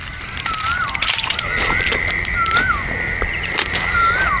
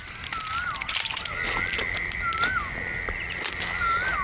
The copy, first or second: first